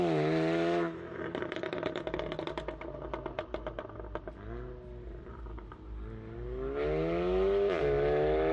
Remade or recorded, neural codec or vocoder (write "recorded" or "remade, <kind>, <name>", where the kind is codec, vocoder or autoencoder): recorded